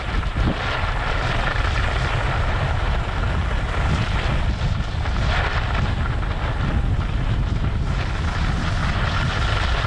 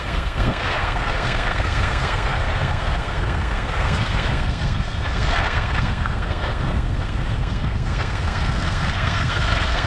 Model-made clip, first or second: second